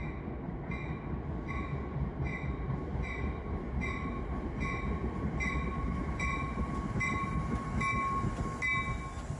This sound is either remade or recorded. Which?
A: recorded